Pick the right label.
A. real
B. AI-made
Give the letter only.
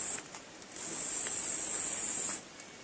A